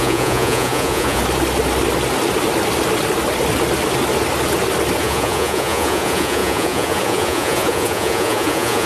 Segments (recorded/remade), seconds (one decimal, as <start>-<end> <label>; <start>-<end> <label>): 0.0-1.2 remade; 1.2-5.0 recorded; 5.0-8.9 remade